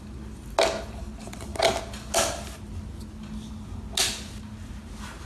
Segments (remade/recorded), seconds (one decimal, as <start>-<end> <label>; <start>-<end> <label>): 0.0-5.3 recorded